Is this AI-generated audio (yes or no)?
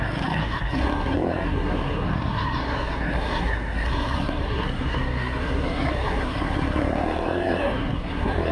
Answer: yes